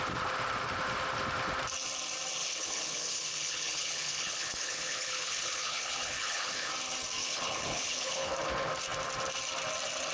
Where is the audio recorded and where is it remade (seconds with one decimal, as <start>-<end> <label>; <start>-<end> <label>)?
0.0-2.4 recorded; 2.4-6.7 remade; 6.7-7.2 recorded; 7.2-8.3 remade; 8.3-10.1 recorded